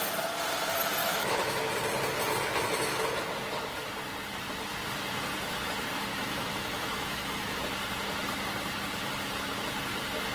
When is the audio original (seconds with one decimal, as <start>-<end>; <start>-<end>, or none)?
0.0-1.0; 1.7-6.1; 7.6-10.3